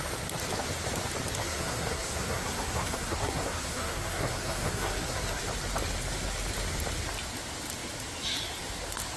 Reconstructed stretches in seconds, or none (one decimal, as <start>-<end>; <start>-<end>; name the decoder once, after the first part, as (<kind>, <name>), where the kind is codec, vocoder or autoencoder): 1.4-5.4 (codec, SNAC)